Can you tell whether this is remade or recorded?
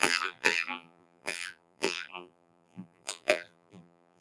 remade